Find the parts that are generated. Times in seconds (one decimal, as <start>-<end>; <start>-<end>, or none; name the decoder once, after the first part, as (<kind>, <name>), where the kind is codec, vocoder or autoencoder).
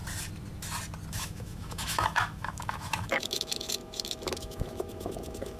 1.1-5.6 (autoencoder, DAC-VAE)